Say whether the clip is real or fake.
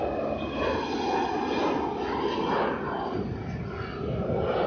real